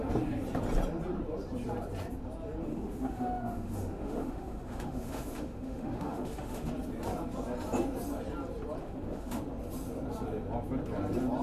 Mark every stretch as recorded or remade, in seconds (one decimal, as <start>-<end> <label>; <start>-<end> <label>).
0.0-2.7 recorded; 2.7-6.7 remade; 6.7-8.8 recorded; 8.8-9.4 remade; 9.4-11.4 recorded